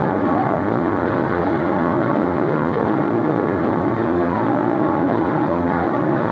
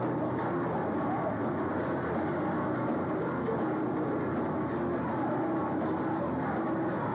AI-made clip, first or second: first